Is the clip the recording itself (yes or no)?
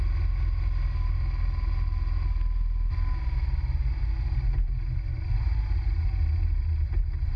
yes